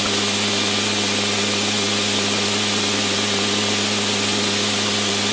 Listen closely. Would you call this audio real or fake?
real